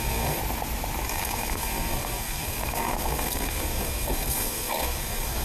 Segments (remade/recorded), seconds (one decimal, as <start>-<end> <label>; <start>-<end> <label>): 0.0-0.4 remade; 0.4-1.1 recorded; 1.1-5.4 remade